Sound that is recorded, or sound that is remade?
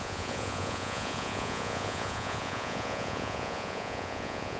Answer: remade